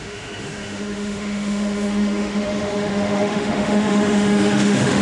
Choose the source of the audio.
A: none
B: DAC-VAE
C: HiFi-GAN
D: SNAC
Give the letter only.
B